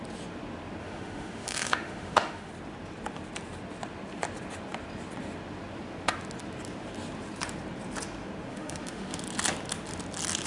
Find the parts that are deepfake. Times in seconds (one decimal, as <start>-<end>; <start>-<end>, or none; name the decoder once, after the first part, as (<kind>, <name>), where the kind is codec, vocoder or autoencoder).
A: 0.8-2.5 (autoencoder, DAC-VAE); 8.5-9.2